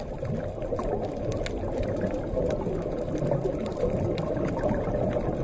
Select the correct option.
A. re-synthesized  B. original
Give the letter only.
B